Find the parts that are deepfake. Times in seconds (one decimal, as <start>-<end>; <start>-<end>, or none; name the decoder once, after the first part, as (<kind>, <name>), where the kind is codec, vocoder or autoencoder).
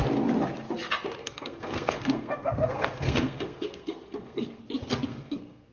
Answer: 1.2-4.6 (codec, SNAC); 5.1-5.7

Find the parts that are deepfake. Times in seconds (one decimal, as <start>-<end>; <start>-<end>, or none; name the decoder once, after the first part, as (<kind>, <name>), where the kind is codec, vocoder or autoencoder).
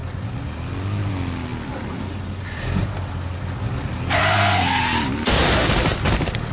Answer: 4.2-4.8 (codec, SNAC)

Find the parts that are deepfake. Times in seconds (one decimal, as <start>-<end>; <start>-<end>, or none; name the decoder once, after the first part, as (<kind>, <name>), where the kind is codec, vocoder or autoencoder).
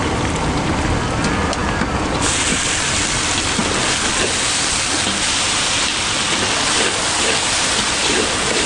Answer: none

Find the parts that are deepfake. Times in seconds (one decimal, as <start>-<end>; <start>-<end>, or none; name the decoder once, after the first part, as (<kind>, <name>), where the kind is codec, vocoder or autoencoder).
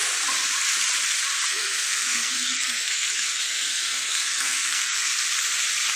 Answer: 1.5-5.1 (codec, SNAC)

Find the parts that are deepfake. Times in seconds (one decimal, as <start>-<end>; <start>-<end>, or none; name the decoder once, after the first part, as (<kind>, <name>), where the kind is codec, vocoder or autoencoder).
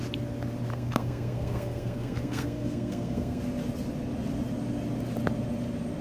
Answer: 0.7-3.4 (codec, SNAC)